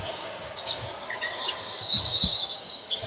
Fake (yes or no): yes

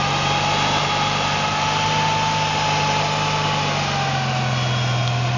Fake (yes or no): no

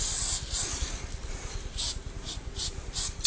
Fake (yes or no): no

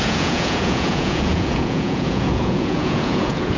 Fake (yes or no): yes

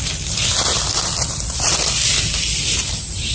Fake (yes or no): yes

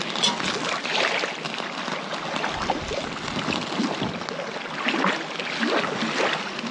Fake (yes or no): no